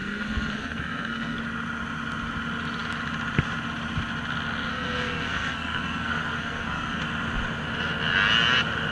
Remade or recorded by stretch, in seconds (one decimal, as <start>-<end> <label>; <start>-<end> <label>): 0.0-1.4 remade; 1.4-4.7 recorded; 4.7-7.0 remade; 7.0-8.9 recorded